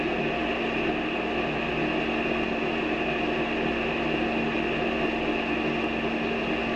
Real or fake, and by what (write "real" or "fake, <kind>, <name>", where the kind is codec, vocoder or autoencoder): real